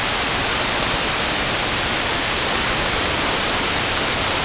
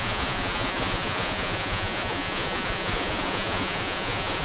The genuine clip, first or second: first